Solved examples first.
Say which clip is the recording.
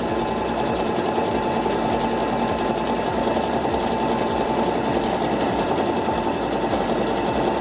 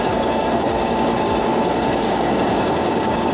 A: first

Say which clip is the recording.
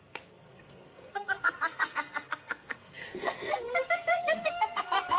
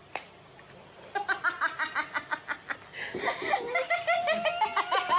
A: second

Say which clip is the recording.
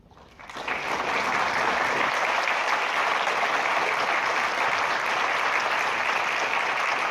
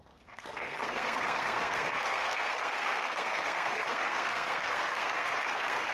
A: first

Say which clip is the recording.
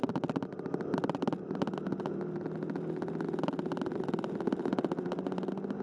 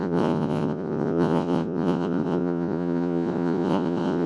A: first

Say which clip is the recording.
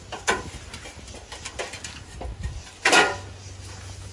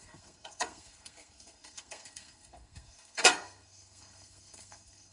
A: first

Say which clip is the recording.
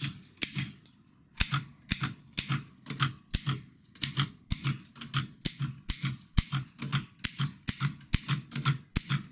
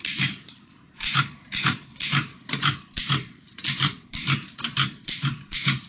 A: first